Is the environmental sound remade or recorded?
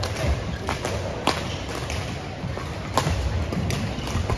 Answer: recorded